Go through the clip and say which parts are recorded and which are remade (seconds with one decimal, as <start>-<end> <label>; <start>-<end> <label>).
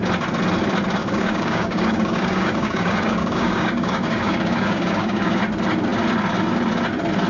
0.0-1.0 recorded; 1.0-5.4 remade; 5.4-7.3 recorded